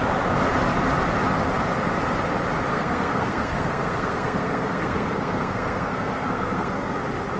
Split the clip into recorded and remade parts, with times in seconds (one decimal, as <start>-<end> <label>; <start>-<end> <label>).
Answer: 0.0-2.7 recorded; 2.7-7.0 remade; 7.0-7.4 recorded